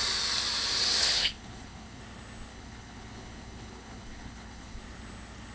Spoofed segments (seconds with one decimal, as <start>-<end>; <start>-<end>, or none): 1.0-2.0; 2.5-4.8